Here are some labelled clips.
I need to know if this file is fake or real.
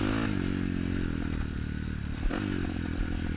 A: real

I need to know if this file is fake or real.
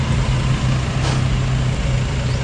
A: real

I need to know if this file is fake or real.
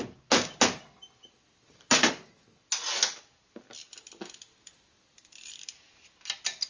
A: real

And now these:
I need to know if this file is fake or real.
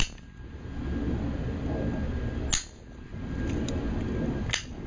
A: real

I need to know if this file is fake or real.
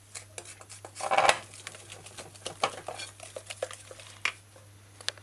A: real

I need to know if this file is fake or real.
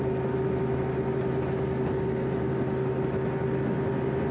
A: real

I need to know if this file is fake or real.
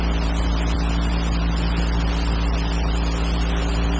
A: real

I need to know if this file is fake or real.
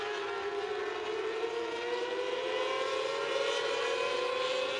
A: real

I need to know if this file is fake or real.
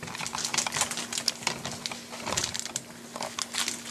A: real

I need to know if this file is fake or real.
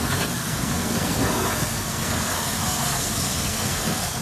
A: fake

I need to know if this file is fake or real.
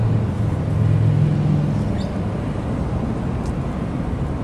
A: real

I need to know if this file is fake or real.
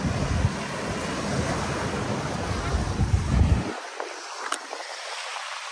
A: real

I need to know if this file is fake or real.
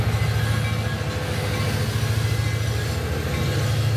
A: real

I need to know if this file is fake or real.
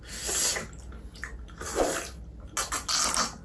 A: real